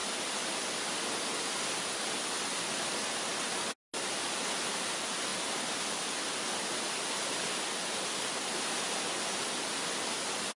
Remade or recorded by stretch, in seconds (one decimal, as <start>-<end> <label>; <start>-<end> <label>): 0.0-10.6 recorded